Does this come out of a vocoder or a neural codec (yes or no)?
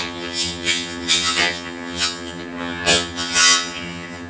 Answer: yes